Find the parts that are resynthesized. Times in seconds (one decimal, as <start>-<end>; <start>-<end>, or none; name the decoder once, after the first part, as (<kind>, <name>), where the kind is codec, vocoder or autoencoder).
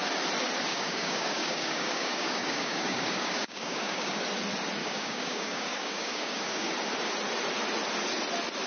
0.7-4.2 (codec, DAC); 4.8-6.7